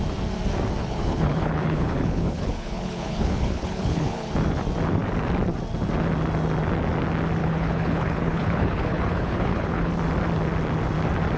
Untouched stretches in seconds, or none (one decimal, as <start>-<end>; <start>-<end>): 0.0-0.8; 4.3-7.4; 9.9-11.4